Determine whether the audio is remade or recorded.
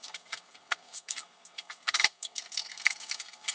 remade